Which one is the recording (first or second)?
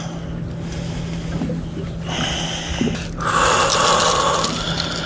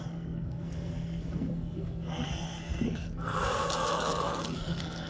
first